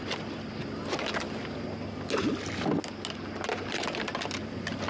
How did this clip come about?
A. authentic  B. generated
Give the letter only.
A